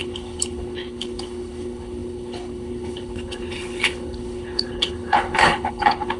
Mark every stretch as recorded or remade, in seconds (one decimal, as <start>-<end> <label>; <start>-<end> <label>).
0.0-6.2 remade